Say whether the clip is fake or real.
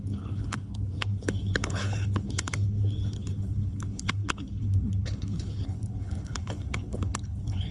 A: fake